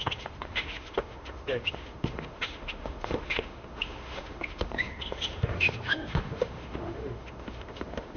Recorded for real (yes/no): no